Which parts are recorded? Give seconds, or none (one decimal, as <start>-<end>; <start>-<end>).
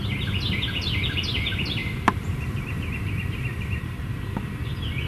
0.0-1.8; 4.2-5.1